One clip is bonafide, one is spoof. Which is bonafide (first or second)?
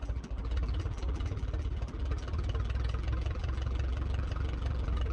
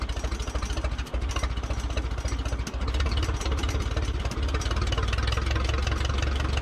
second